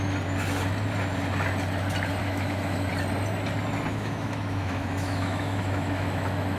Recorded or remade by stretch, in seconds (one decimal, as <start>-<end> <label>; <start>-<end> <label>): 0.0-2.2 recorded; 2.2-2.9 remade; 2.9-3.9 recorded; 3.9-6.6 remade